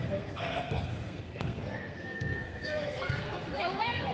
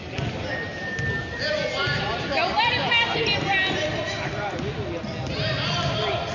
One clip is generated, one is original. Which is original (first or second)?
second